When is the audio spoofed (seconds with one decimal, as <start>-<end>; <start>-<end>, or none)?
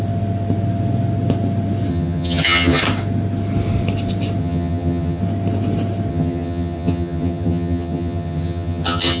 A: 1.9-2.8; 4.4-5.2; 6.1-9.2